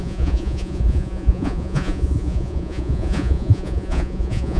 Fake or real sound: fake